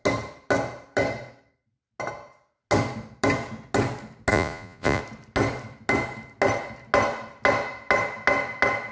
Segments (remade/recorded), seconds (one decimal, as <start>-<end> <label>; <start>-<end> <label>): 0.0-4.3 recorded; 4.3-5.0 remade; 5.0-8.9 recorded